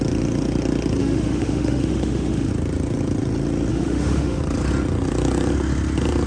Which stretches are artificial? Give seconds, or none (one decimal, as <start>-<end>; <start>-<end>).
1.0-2.5; 3.7-4.4